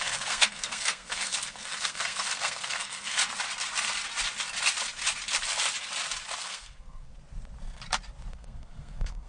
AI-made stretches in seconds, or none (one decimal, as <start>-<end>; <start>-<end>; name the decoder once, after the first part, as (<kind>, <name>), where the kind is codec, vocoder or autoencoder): 0.0-3.2 (codec, SNAC); 6.4-7.1; 8.3-9.3